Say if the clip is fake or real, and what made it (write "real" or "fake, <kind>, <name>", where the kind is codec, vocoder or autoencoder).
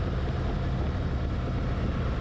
real